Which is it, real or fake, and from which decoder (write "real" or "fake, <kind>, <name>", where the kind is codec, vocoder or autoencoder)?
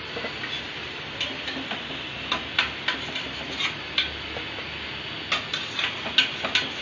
real